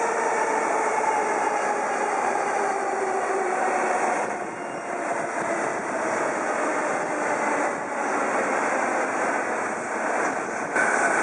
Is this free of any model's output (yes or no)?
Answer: yes